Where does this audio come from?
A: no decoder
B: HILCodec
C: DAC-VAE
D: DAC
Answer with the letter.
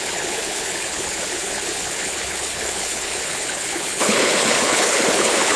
B